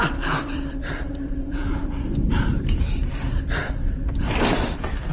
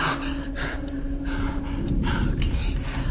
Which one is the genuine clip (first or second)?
second